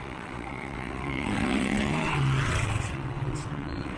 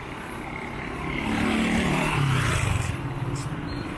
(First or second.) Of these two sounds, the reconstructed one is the first